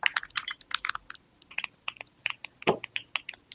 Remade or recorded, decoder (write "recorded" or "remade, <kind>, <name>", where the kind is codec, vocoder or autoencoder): recorded